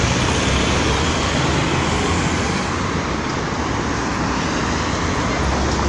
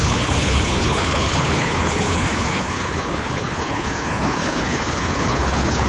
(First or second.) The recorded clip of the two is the first